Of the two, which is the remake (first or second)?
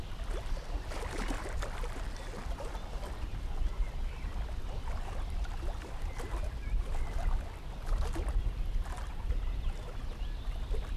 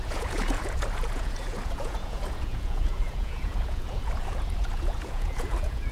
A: second